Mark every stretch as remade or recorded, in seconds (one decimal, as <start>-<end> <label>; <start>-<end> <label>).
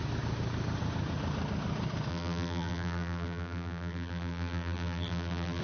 0.0-2.1 recorded; 2.1-5.6 remade